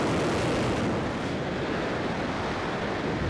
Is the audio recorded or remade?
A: recorded